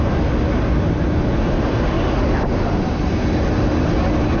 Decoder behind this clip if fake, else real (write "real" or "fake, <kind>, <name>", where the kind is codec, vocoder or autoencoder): real